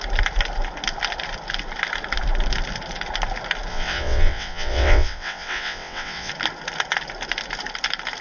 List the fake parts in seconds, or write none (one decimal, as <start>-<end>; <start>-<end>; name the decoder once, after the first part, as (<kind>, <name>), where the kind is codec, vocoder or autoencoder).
3.7-6.3 (vocoder, WaveNeXt)